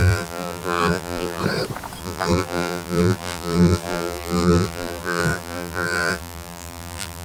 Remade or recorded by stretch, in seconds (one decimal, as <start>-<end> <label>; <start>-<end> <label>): 0.0-1.4 remade; 1.4-2.0 recorded; 2.0-7.2 remade